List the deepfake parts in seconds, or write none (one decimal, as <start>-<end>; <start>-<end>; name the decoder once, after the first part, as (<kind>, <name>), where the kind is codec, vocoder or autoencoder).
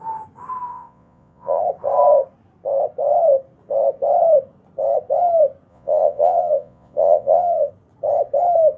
0.7-1.6 (vocoder, Vocos); 5.7-7.7